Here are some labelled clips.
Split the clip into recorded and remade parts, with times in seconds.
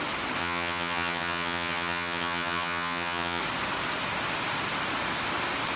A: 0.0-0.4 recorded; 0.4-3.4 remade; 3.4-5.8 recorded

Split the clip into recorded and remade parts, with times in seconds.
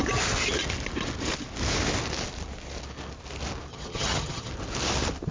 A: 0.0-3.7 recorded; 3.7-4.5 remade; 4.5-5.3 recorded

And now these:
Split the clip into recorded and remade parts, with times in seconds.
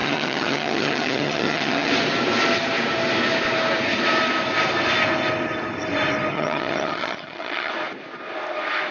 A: 0.0-1.9 remade; 1.9-6.3 recorded; 6.3-7.7 remade; 7.7-8.9 recorded